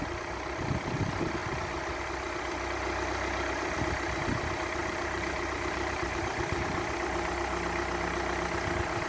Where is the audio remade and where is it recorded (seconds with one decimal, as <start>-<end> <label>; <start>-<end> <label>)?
0.0-4.8 recorded; 4.8-6.2 remade; 6.2-9.1 recorded